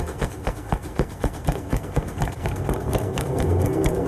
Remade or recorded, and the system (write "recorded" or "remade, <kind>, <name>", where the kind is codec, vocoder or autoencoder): remade, codec, SNAC